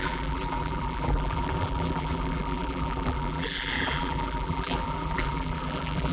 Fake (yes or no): yes